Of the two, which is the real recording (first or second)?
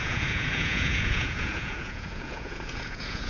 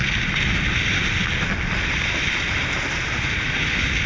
second